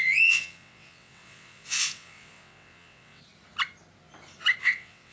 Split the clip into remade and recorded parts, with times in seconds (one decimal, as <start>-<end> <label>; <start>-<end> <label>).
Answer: 0.0-3.2 remade; 3.2-4.6 recorded; 4.6-5.1 remade